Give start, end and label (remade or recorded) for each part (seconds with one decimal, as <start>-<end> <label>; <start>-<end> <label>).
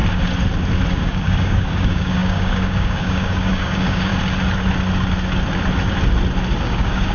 0.0-0.9 recorded; 0.9-4.1 remade; 4.1-6.6 recorded; 6.6-7.1 remade